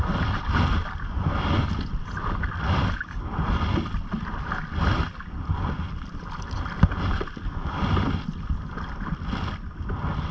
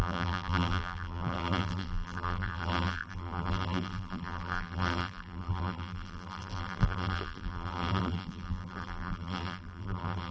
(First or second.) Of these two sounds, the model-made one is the second